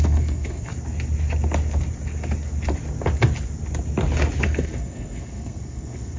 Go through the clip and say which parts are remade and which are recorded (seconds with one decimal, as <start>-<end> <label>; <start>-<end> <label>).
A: 0.0-0.7 remade; 0.7-4.4 recorded; 4.4-6.2 remade